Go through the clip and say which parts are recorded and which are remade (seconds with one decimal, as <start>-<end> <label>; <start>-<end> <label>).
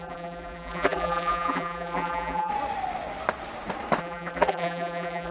0.0-2.5 remade; 2.5-4.0 recorded; 4.0-5.3 remade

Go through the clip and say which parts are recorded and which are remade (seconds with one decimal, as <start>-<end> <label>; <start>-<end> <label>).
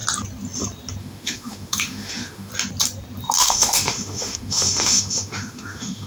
0.0-1.0 recorded; 1.0-2.5 remade; 2.5-3.4 recorded; 3.4-6.1 remade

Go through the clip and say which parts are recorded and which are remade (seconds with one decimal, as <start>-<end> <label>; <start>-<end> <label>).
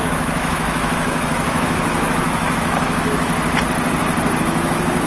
0.0-3.3 remade; 3.3-4.4 recorded; 4.4-5.1 remade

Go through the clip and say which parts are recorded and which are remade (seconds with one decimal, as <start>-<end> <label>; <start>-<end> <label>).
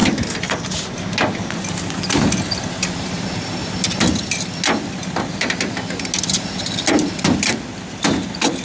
0.0-8.6 recorded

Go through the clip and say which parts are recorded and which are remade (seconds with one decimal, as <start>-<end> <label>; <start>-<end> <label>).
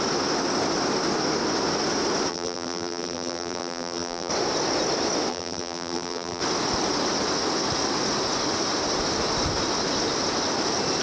0.0-2.3 recorded; 2.3-4.3 remade; 4.3-5.3 recorded; 5.3-6.4 remade; 6.4-11.0 recorded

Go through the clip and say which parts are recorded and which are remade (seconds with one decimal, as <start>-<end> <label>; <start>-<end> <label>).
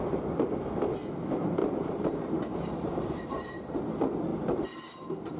0.0-1.6 recorded; 1.6-3.6 remade; 3.6-4.3 recorded; 4.3-5.4 remade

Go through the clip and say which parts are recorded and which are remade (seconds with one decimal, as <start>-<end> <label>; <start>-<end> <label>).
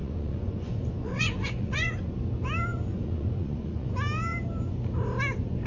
0.0-2.1 remade; 2.1-2.7 recorded; 2.7-3.9 remade; 3.9-5.7 recorded